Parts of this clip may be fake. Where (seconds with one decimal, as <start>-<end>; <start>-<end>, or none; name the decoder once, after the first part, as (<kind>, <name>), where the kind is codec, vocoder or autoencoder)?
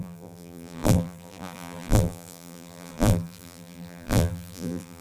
0.0-5.0 (vocoder, BigVGAN v2)